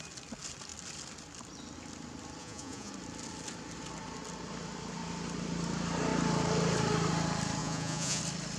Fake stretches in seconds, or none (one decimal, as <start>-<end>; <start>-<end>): 2.4-2.9; 7.6-8.2